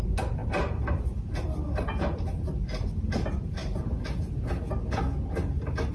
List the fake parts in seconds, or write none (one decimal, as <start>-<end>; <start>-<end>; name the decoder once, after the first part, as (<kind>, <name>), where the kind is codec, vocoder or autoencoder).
none